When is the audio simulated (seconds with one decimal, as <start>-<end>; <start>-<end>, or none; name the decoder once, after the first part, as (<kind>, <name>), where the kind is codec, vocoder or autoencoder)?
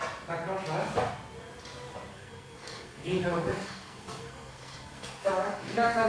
2.1-6.1 (codec, SNAC)